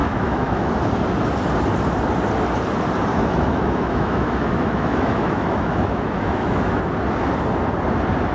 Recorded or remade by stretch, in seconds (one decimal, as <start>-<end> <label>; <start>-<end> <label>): 0.0-0.7 remade; 0.7-3.1 recorded; 3.1-6.8 remade; 6.8-8.3 recorded